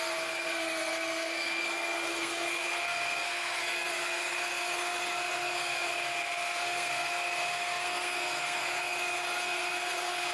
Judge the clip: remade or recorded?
remade